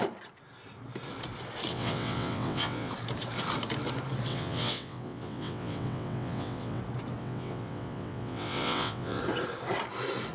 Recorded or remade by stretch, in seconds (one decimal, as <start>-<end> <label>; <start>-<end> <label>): 0.0-1.7 recorded; 1.7-2.9 remade; 2.9-4.3 recorded; 4.3-6.8 remade; 6.8-7.2 recorded; 7.2-9.2 remade; 9.2-10.3 recorded